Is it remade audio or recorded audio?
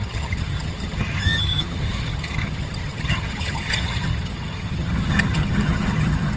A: remade